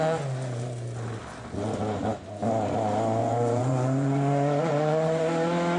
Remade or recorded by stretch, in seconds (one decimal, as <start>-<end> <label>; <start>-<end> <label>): 0.0-3.2 recorded; 3.2-5.3 remade; 5.3-5.8 recorded